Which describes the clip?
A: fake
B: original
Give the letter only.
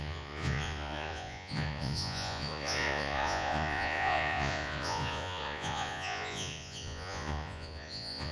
A